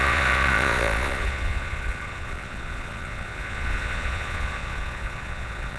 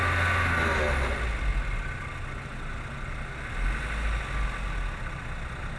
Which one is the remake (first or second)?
first